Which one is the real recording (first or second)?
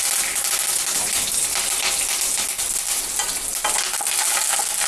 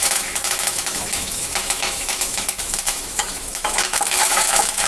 first